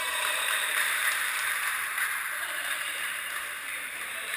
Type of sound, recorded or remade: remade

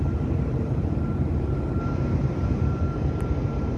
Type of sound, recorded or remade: remade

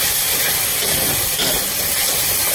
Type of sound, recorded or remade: remade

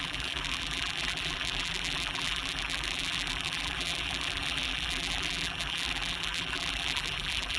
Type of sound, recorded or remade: remade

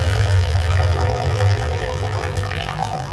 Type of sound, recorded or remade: remade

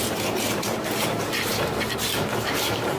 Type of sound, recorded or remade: remade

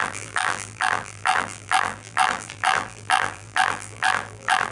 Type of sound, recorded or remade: remade